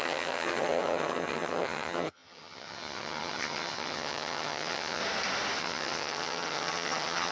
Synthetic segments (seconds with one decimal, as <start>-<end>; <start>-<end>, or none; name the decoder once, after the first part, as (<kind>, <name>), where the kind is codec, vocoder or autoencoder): 0.0-5.0 (vocoder, HiFi-GAN); 5.6-7.3